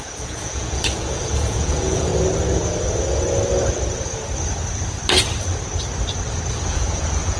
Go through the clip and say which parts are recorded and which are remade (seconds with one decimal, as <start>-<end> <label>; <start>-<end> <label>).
0.0-2.1 remade; 2.1-6.5 recorded; 6.5-7.4 remade